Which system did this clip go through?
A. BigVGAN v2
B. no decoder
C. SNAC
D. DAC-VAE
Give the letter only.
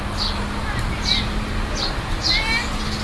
B